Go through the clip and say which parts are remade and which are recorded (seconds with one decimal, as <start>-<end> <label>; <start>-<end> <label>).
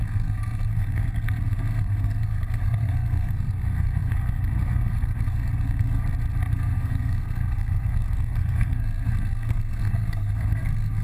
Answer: 0.0-6.0 remade; 6.0-6.5 recorded; 6.5-11.0 remade